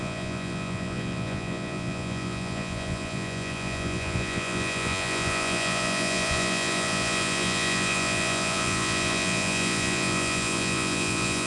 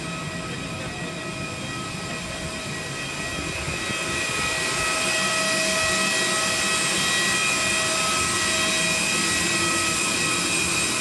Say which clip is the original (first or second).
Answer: second